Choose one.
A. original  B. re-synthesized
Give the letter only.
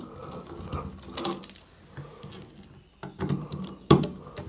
A